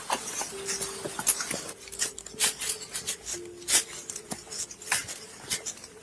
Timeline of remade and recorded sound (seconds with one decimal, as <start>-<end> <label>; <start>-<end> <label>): 0.0-6.0 recorded

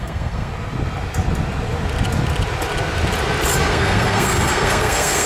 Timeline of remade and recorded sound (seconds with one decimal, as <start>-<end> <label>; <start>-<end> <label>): 0.0-0.5 remade; 0.5-3.7 recorded; 3.7-5.3 remade

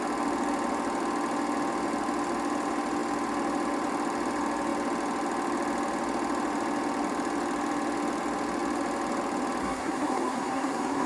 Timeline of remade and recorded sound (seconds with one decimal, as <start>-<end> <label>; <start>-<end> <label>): 0.0-9.6 recorded; 9.6-11.1 remade

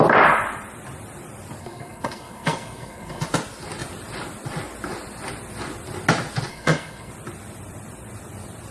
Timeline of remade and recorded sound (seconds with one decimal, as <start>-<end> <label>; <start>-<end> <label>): 0.0-1.6 recorded; 1.6-3.2 remade; 3.2-6.5 recorded; 6.5-7.1 remade; 7.1-8.7 recorded

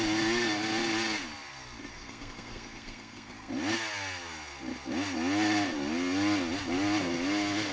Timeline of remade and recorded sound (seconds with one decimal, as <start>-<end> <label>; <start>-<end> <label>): 0.0-1.9 recorded; 1.9-3.5 remade; 3.5-7.7 recorded

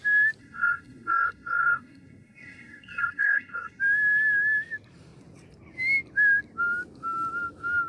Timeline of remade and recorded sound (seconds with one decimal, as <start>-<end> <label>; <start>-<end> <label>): 0.0-0.4 recorded; 0.4-3.8 remade; 3.8-7.9 recorded